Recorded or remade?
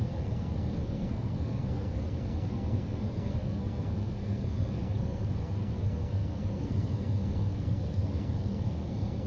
remade